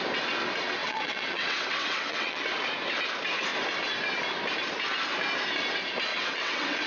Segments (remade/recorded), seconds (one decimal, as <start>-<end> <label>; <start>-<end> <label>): 0.0-0.8 recorded; 0.8-2.4 remade; 2.4-6.1 recorded; 6.1-6.9 remade